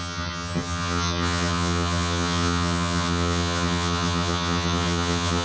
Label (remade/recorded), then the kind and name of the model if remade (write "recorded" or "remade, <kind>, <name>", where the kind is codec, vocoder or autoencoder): remade, vocoder, HiFi-GAN